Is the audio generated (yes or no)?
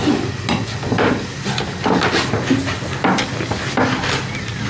no